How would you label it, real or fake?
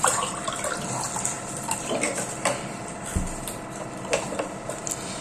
real